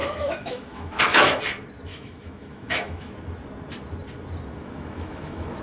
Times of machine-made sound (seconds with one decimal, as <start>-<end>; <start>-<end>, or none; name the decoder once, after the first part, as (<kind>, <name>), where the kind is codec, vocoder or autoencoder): 0.0-1.4 (autoencoder, DAC-VAE); 1.9-3.1; 4.6-5.6